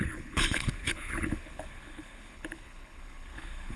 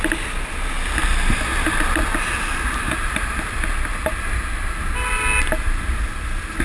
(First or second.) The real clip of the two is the second